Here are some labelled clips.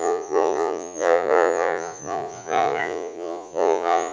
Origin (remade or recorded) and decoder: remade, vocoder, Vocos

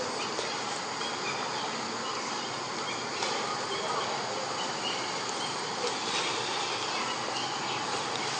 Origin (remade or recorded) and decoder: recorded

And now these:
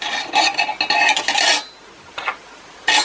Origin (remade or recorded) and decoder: recorded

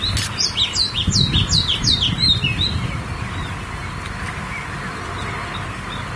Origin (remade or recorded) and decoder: recorded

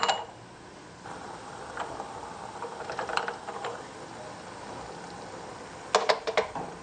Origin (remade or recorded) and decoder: recorded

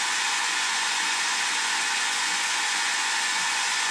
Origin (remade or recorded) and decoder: remade, vocoder, Vocos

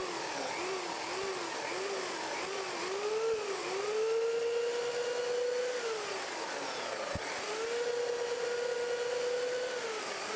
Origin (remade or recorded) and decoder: recorded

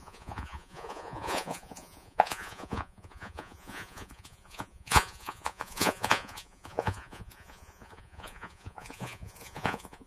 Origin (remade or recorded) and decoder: remade, vocoder, Vocos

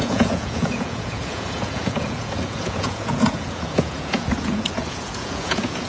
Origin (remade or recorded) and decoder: remade, vocoder, Vocos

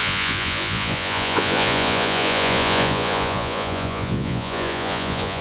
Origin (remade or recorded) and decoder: remade, vocoder, Vocos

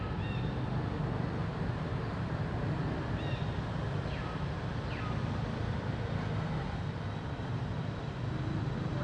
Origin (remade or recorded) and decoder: recorded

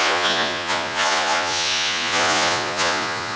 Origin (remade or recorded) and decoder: remade, vocoder, Vocos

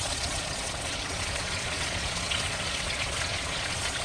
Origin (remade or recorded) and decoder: remade, vocoder, Vocos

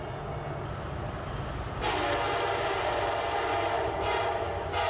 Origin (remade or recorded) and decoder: recorded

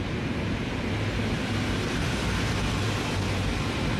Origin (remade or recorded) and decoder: recorded